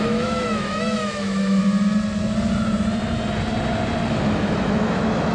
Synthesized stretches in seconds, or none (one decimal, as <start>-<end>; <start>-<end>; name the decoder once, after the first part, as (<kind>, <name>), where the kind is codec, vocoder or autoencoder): 0.0-1.6 (autoencoder, DAC-VAE); 4.1-5.3